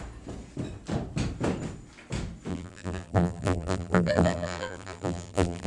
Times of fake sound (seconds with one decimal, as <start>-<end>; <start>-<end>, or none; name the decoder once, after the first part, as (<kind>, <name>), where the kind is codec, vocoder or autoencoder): 2.5-5.7 (vocoder, BigVGAN v2)